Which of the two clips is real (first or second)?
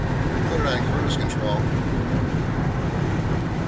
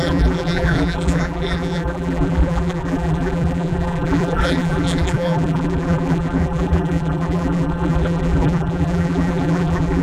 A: first